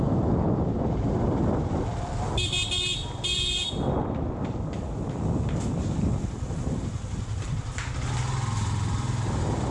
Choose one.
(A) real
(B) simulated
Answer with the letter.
A